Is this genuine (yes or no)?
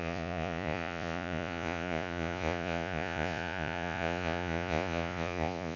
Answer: no